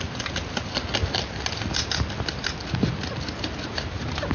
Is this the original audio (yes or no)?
yes